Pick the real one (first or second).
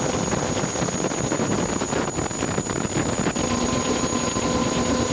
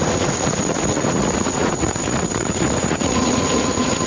first